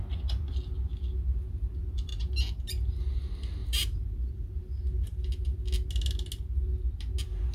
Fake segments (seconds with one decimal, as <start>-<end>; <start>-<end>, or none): 3.6-4.3